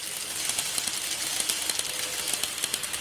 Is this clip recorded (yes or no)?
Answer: yes